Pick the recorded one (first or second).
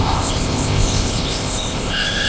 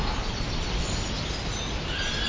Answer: second